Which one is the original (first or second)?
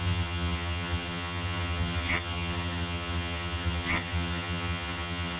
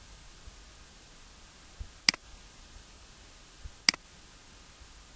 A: second